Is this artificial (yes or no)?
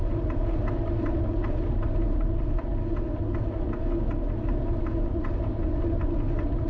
no